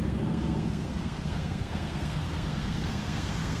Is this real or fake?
fake